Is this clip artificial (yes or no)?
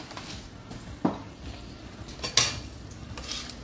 no